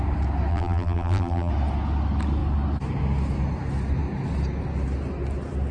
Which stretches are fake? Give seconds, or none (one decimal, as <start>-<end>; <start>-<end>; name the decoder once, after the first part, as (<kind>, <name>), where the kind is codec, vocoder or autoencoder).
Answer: 0.5-1.5 (vocoder, BigVGAN v2)